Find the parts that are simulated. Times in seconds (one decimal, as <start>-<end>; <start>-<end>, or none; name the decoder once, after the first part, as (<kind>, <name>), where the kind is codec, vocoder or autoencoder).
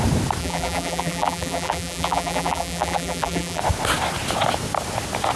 0.4-3.6 (vocoder, BigVGAN v2)